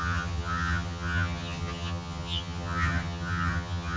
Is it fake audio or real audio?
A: fake